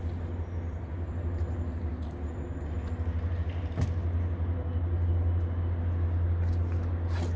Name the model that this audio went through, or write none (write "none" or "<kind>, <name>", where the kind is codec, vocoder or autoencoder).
none